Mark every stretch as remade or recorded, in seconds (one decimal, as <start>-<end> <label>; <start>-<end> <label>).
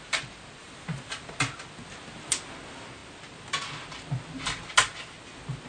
0.0-0.6 recorded; 0.6-1.3 remade; 1.3-5.7 recorded